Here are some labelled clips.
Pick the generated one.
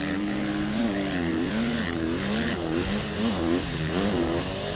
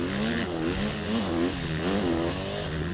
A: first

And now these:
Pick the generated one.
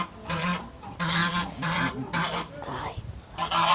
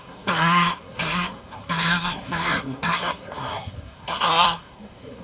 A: second